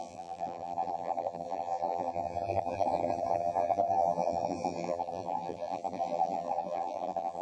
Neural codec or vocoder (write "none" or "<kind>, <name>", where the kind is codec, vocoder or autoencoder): vocoder, BigVGAN v2